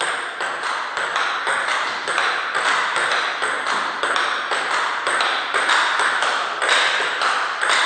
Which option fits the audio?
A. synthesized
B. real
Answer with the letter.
B